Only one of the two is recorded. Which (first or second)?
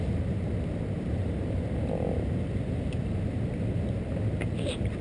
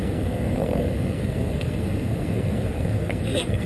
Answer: first